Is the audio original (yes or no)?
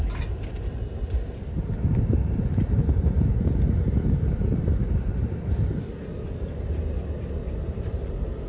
yes